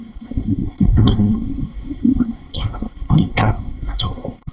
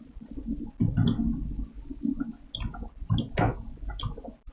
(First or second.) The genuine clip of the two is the second